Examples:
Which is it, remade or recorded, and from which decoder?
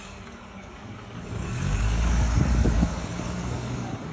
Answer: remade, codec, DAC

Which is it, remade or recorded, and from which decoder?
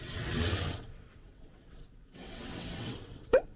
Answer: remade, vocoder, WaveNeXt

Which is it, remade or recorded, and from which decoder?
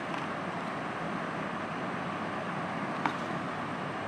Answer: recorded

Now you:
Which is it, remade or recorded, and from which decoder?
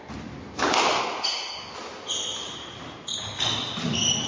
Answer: recorded